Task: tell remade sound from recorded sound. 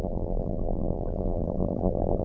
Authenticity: remade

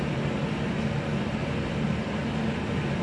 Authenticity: recorded